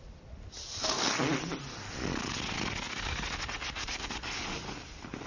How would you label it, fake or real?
real